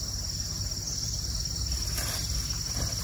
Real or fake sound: real